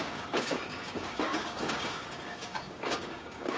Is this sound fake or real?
fake